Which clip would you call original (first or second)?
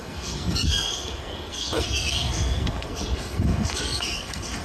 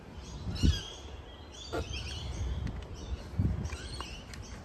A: second